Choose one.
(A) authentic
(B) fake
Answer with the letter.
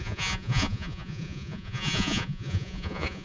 B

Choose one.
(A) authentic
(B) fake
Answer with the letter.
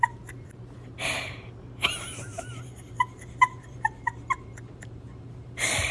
B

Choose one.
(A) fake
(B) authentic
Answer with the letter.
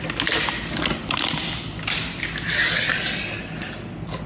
B